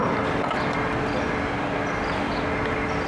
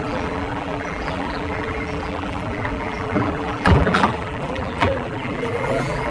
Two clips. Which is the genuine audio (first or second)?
first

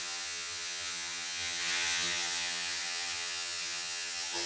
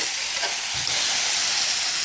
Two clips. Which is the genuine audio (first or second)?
second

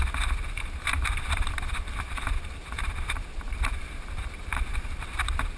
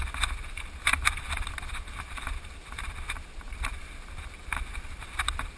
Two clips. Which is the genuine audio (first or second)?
second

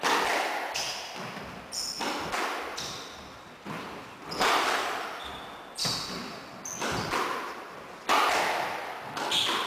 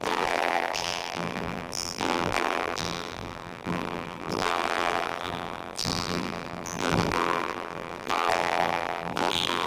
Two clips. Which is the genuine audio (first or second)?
first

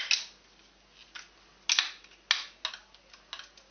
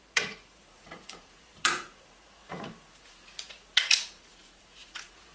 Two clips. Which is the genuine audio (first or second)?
first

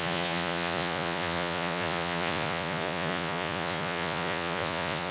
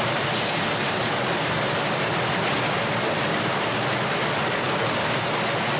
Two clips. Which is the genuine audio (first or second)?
second